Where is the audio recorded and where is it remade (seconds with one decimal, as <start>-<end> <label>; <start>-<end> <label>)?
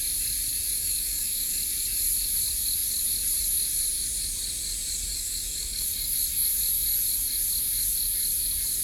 0.0-0.5 recorded; 0.5-1.5 remade; 1.5-5.1 recorded; 5.1-5.9 remade; 5.9-8.8 recorded